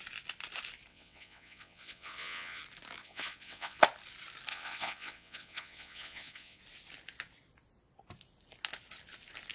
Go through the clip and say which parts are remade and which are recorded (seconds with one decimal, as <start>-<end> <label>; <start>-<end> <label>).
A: 0.0-0.9 recorded; 0.9-2.6 remade; 2.6-3.0 recorded; 3.0-3.8 remade; 3.8-4.5 recorded; 4.5-6.6 remade; 6.6-9.5 recorded